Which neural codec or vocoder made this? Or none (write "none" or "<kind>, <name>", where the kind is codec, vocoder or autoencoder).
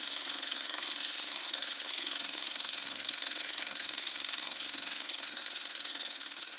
codec, SNAC